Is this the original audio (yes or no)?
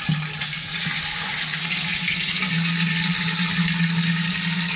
yes